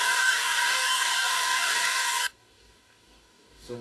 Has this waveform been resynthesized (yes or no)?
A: yes